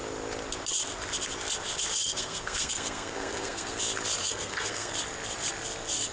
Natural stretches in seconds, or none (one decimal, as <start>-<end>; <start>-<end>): 0.0-2.0; 3.8-4.2; 4.9-6.1